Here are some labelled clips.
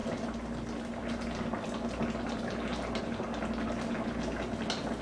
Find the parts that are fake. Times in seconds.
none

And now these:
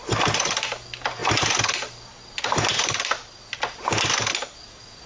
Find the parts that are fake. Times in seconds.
none

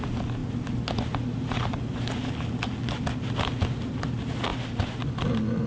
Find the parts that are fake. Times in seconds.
none

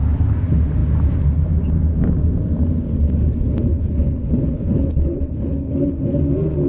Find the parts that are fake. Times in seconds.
3.7-6.2 (codec, HILCodec)

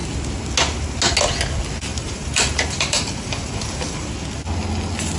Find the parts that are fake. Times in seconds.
1.9-4.1 (vocoder, BigVGAN v2)

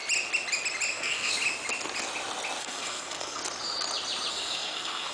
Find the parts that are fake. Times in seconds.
0.9-1.3 (codec, SNAC); 2.6-3.4; 4.3-5.1

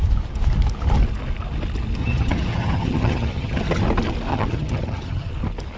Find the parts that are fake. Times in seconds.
2.0-3.8 (vocoder, HiFi-GAN); 4.3-5.3

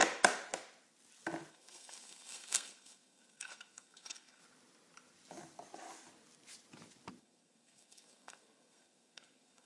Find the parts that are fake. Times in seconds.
1.5-4.4 (codec, SNAC); 7.2-9.7